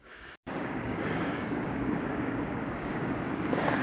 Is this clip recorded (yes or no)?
no